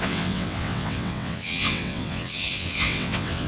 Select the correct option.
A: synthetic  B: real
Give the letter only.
A